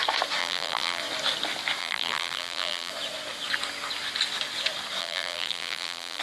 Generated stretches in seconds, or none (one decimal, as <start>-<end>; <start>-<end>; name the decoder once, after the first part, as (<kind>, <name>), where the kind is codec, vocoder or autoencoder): 0.4-1.0 (vocoder, BigVGAN v2); 1.8-2.9; 5.0-6.2